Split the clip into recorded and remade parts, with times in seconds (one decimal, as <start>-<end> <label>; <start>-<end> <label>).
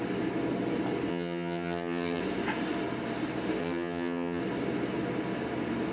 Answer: 0.0-1.1 recorded; 1.1-2.2 remade; 2.2-3.6 recorded; 3.6-4.4 remade; 4.4-5.9 recorded